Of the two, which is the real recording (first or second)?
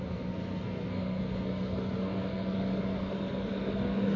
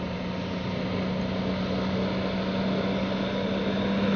second